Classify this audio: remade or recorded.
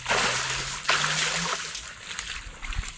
recorded